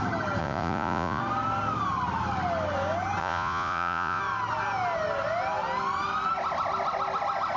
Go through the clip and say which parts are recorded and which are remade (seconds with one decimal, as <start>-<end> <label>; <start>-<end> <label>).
0.0-0.4 recorded; 0.4-1.2 remade; 1.2-3.2 recorded; 3.2-4.2 remade; 4.2-7.6 recorded